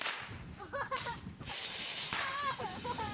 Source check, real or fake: fake